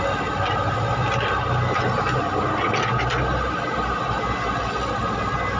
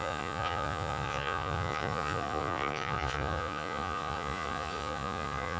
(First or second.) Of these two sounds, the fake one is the second